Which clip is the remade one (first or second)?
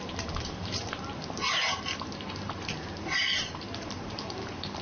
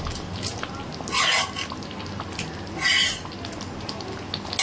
first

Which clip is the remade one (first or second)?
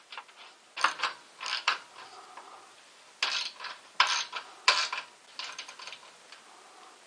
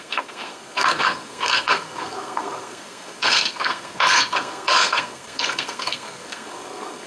second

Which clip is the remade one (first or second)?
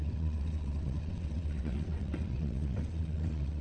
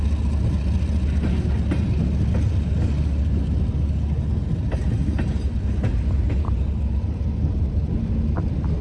first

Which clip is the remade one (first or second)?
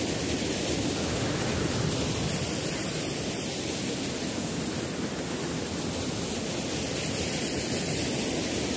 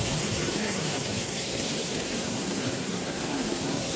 second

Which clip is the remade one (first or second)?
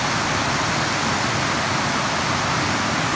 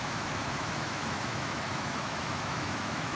second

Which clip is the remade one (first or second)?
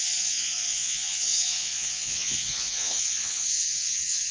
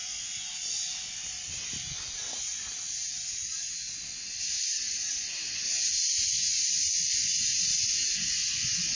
first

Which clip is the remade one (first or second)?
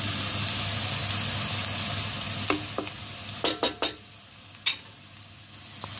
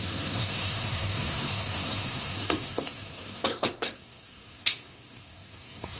second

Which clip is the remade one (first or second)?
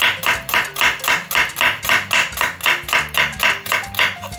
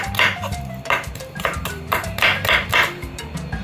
second